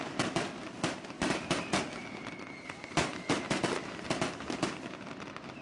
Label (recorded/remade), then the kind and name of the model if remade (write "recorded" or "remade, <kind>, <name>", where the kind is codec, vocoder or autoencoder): recorded